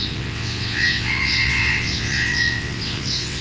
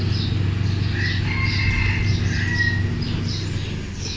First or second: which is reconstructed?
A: first